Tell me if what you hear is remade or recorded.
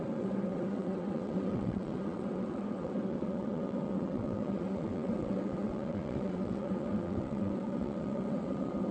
remade